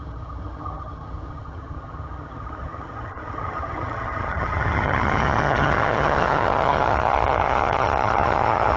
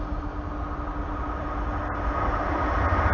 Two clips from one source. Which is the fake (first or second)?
first